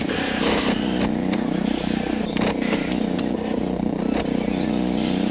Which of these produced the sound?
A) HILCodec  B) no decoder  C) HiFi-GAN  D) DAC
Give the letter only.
B